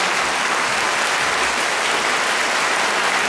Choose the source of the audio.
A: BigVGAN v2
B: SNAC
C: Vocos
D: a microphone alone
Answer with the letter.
D